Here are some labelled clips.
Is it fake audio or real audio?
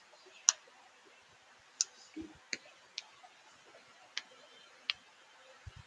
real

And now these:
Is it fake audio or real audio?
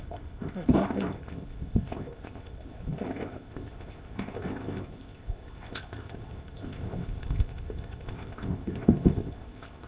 fake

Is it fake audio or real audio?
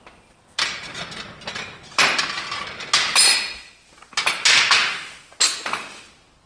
real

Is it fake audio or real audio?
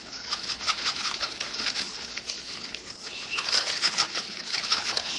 fake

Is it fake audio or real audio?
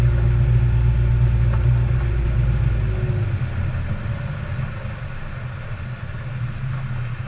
real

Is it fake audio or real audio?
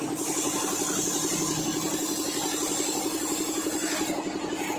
real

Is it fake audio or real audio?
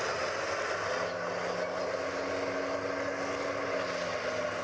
real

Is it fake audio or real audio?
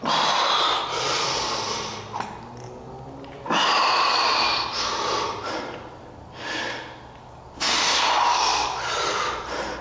real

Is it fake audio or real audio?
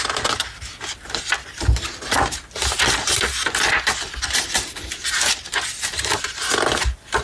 real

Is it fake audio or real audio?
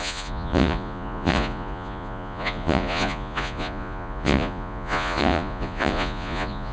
fake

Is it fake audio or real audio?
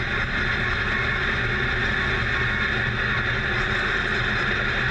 real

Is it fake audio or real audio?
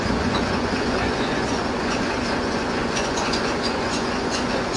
fake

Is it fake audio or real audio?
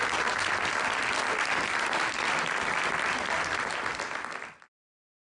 real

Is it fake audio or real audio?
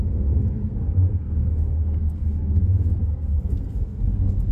fake